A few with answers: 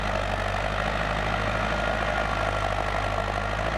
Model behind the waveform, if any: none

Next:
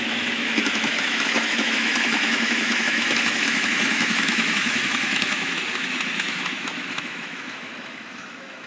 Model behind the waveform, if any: autoencoder, DAC-VAE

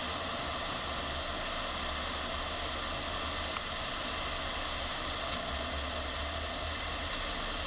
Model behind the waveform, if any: none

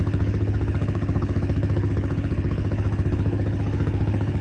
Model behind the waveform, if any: codec, HILCodec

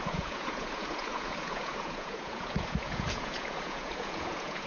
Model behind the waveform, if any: vocoder, Vocos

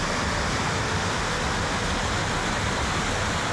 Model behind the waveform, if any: none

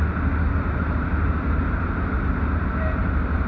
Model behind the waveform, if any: none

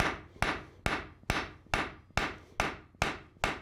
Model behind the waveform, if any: none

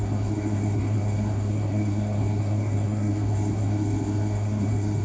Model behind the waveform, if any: codec, SNAC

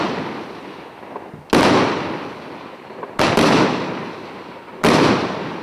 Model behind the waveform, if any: none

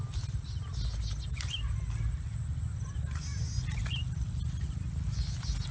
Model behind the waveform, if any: none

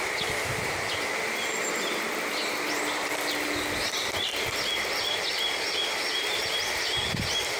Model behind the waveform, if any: none